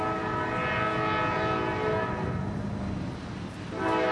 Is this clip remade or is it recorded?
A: recorded